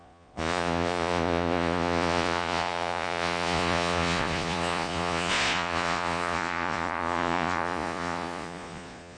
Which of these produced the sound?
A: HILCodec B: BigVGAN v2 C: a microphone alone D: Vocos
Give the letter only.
D